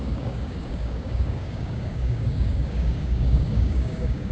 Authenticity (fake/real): fake